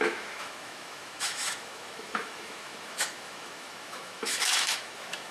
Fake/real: fake